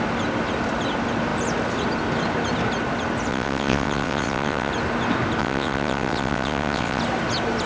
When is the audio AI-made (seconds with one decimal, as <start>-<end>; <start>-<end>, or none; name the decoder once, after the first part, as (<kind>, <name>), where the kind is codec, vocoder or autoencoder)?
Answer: 3.3-4.7 (vocoder, WaveNeXt); 5.4-7.0